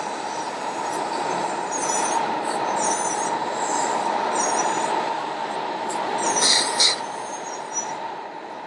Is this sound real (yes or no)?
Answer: no